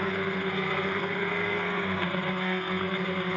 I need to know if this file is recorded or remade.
remade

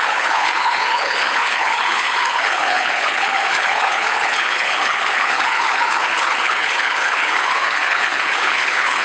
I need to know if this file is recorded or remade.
remade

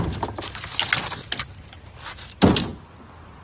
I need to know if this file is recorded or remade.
recorded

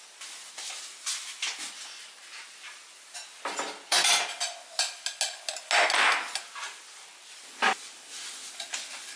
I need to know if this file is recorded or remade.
recorded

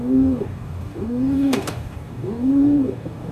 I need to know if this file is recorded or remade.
remade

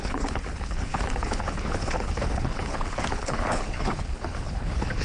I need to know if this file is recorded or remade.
remade